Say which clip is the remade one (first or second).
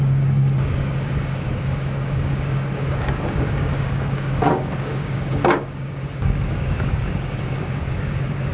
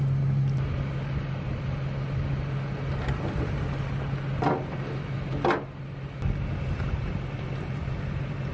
first